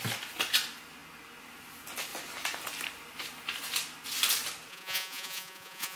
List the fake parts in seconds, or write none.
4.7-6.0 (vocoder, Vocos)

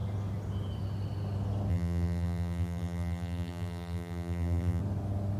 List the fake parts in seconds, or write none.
1.7-4.8 (vocoder, BigVGAN v2)